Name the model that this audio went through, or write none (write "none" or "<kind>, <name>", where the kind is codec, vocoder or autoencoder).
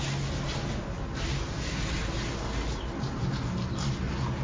none